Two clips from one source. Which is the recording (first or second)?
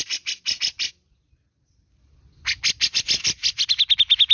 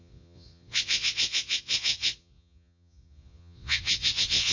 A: first